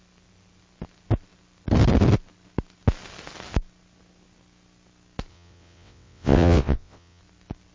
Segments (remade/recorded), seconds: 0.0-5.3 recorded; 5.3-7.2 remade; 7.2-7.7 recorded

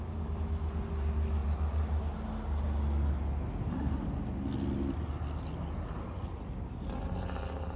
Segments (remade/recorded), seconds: 0.0-7.8 recorded

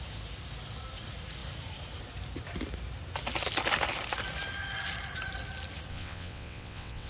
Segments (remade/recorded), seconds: 0.0-5.9 recorded; 5.9-7.1 remade

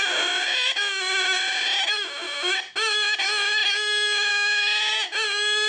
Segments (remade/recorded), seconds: 0.0-5.7 recorded

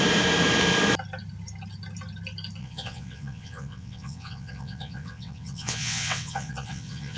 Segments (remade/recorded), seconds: 0.0-2.6 recorded; 2.6-7.2 remade

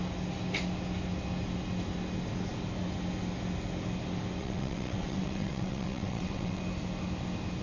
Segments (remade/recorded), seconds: 0.0-4.4 recorded; 4.4-6.6 remade; 6.6-7.6 recorded

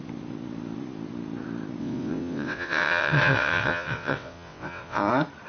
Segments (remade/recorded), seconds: 0.0-1.8 recorded; 1.8-5.1 remade; 5.1-5.5 recorded

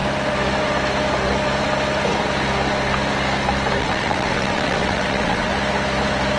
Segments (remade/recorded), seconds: 0.0-3.8 recorded; 3.8-5.5 remade; 5.5-6.4 recorded